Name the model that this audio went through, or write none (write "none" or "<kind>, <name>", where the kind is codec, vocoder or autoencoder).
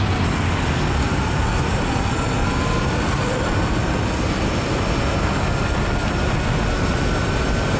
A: none